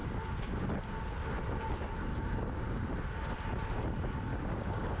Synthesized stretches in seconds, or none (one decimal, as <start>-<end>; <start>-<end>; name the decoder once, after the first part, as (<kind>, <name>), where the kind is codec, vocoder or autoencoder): 2.1-2.9 (codec, DAC); 4.3-5.0